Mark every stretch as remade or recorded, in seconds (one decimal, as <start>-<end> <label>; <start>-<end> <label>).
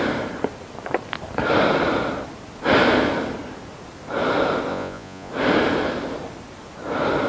0.0-4.7 recorded; 4.7-5.3 remade; 5.3-7.3 recorded